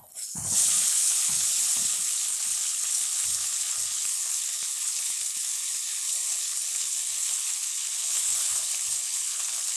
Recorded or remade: remade